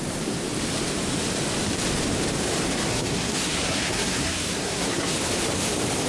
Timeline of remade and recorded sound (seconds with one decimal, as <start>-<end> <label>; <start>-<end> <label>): 0.0-2.9 recorded; 2.9-5.1 remade; 5.1-6.1 recorded